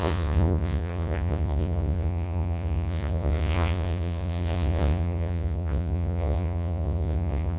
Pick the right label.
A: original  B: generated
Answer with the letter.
B